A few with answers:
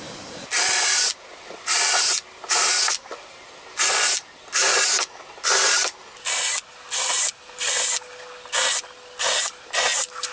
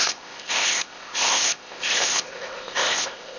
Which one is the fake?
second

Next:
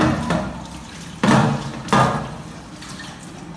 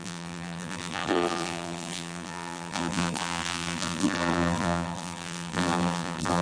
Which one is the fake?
second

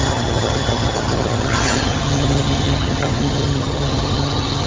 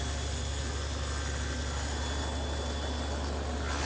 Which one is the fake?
first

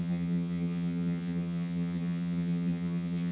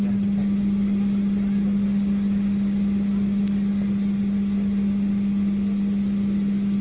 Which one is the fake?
first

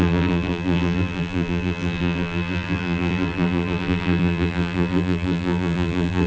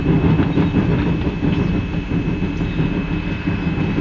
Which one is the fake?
first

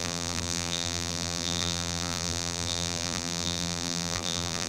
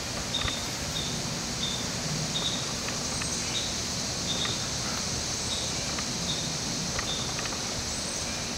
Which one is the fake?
first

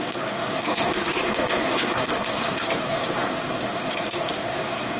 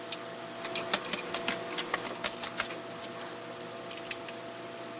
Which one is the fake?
first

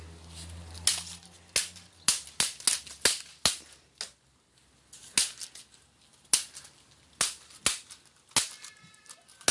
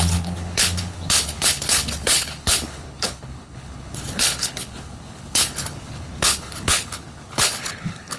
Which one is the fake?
second